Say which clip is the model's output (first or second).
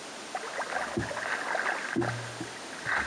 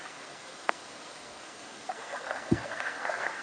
second